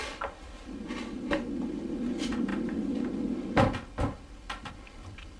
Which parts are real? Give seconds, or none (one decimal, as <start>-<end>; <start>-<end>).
0.0-5.4